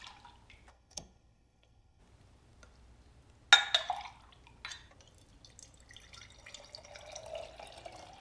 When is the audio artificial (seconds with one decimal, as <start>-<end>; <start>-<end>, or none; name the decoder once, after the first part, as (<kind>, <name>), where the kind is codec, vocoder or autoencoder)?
0.7-2.0 (codec, SNAC)